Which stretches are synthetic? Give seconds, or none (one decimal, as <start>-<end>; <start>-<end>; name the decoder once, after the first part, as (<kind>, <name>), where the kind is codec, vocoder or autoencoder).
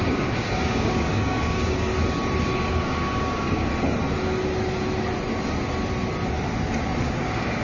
0.0-1.9 (codec, DAC); 2.7-3.7; 7.0-7.6